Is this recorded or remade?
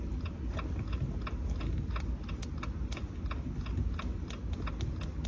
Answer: recorded